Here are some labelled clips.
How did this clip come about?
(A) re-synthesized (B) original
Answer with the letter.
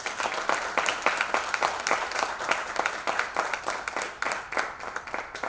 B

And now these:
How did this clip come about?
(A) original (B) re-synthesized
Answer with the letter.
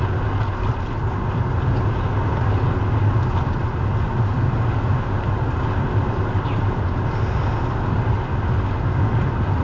A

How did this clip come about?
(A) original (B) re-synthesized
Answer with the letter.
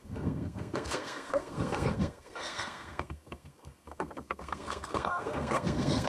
B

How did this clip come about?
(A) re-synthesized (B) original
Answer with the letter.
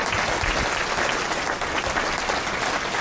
B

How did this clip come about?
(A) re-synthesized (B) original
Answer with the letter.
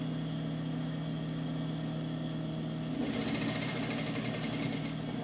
B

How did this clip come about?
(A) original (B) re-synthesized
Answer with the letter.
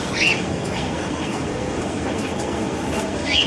B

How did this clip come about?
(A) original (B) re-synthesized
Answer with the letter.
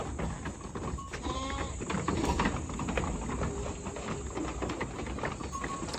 A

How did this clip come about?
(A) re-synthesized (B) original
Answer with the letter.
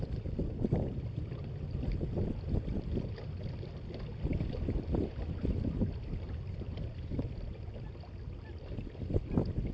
B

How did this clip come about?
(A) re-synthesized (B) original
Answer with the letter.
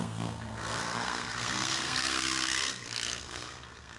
A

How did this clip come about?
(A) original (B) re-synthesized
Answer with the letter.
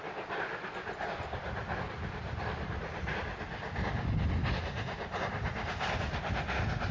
A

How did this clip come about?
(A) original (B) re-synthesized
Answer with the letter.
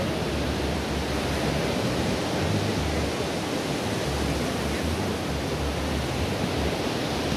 A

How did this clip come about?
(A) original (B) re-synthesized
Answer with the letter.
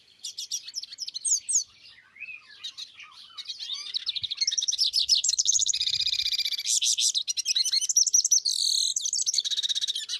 A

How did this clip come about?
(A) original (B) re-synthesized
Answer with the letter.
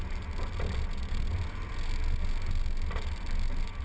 A